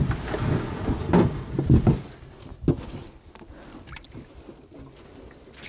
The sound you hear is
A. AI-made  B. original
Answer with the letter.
B